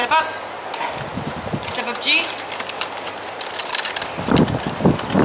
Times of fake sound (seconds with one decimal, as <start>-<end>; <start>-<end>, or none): none